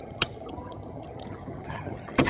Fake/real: fake